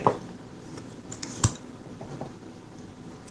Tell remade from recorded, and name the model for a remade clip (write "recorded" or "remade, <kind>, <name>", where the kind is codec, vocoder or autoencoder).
remade, vocoder, BigVGAN v2